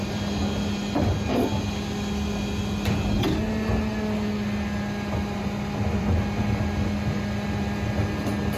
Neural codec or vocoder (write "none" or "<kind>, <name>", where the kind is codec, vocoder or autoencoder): none